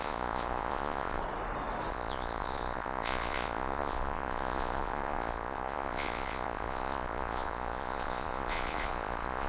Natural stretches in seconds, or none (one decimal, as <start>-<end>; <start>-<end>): 1.2-1.9